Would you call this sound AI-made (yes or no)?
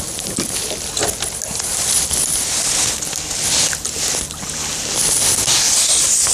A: no